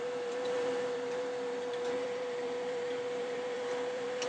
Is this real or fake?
fake